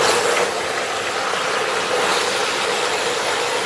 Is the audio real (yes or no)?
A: yes